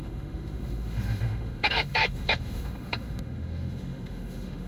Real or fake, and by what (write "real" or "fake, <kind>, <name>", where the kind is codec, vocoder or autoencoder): fake, autoencoder, DAC-VAE